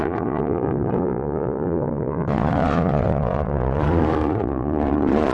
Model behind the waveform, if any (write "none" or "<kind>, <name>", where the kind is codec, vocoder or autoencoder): vocoder, Vocos